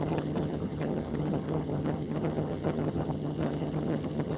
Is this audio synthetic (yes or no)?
yes